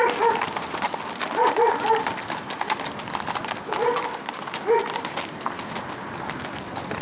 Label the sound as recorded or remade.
recorded